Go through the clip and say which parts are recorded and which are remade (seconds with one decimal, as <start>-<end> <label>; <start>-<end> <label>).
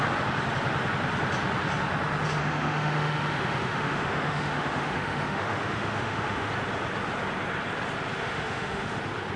0.0-2.4 recorded; 2.4-6.5 remade; 6.5-8.2 recorded; 8.2-9.0 remade; 9.0-9.4 recorded